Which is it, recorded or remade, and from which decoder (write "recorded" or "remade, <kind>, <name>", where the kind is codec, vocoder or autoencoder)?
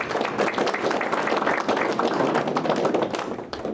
recorded